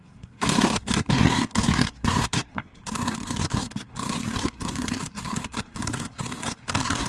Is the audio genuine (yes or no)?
no